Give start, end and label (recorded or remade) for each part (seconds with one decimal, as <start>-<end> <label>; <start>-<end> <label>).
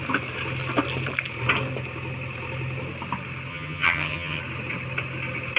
0.0-3.5 recorded; 3.5-4.4 remade; 4.4-5.6 recorded